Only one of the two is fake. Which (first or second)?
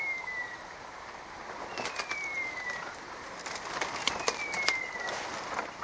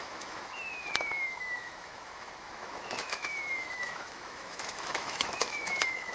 second